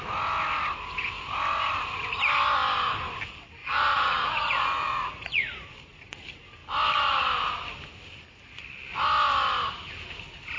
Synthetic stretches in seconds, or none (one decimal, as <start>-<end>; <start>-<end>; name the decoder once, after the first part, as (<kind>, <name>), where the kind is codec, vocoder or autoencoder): 3.6-5.7 (vocoder, Vocos)